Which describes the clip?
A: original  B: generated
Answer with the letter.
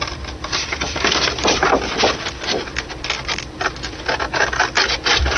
B